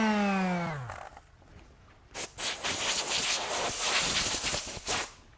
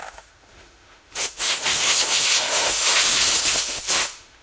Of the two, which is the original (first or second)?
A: first